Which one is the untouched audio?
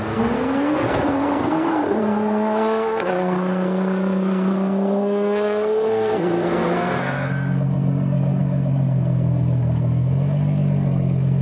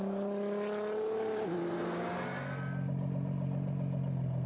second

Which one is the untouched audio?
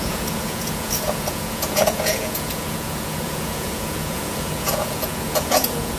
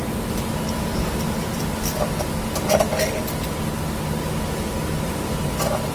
second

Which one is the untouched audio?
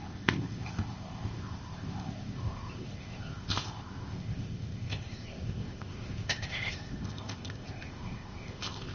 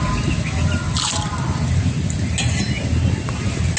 second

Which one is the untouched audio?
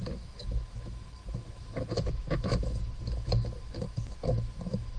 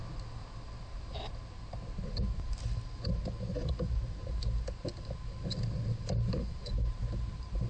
second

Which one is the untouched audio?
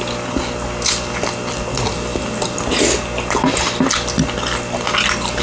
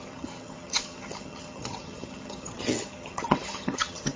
first